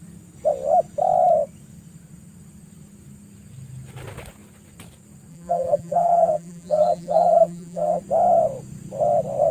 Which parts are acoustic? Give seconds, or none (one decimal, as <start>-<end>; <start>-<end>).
0.0-5.3; 8.0-9.5